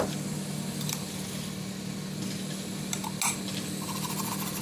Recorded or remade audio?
recorded